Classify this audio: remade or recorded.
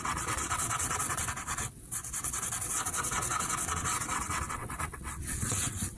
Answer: remade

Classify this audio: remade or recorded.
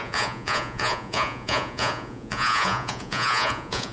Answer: remade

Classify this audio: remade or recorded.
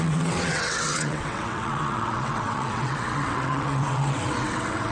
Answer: remade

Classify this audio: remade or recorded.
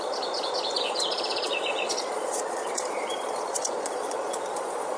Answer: remade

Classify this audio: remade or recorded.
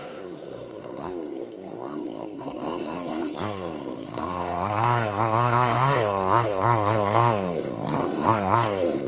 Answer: remade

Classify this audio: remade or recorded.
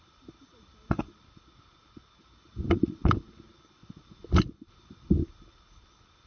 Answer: recorded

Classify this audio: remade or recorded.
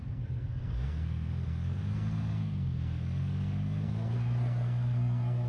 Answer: remade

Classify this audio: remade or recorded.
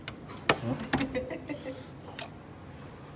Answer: recorded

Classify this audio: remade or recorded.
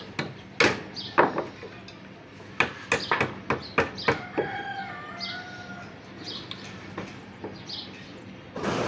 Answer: recorded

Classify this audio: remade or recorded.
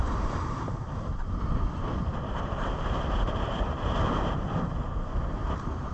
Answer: remade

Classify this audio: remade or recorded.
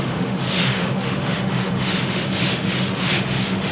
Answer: remade